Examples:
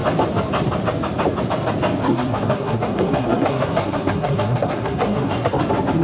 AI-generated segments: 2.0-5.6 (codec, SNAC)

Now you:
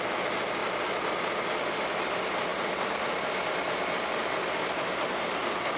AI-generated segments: none